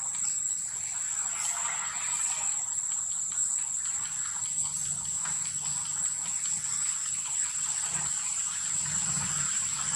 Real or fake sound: real